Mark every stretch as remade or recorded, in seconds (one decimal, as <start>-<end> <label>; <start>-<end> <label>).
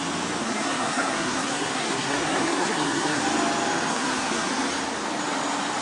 0.0-0.4 recorded; 0.4-3.2 remade; 3.2-3.9 recorded; 3.9-4.5 remade; 4.5-5.8 recorded